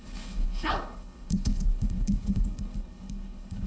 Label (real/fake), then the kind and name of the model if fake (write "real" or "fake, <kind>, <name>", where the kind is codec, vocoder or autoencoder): fake, codec, HILCodec